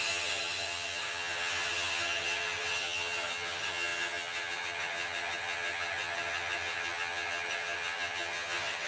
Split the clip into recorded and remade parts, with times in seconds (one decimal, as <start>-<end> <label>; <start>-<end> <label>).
0.0-8.9 remade